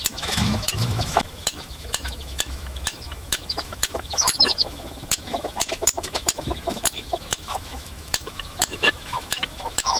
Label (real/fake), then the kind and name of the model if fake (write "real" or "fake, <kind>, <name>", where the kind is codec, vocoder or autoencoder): fake, autoencoder, DAC-VAE